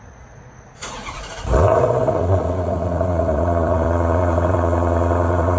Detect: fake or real fake